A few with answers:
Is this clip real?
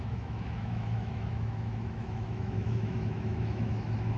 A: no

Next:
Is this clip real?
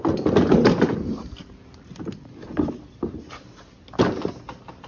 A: yes